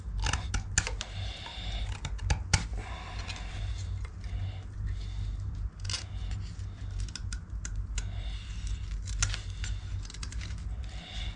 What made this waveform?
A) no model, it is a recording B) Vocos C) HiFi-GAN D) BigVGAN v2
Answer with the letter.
A